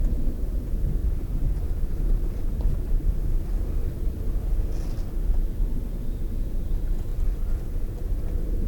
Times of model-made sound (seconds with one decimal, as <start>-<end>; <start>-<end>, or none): 0.0-3.1; 5.3-7.1